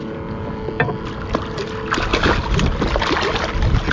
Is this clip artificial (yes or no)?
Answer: no